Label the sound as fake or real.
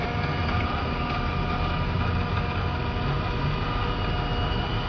real